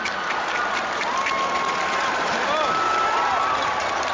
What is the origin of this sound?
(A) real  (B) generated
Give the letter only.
A